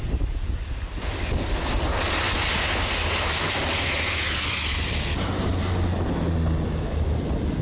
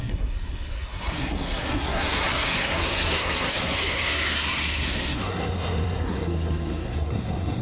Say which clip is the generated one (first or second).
second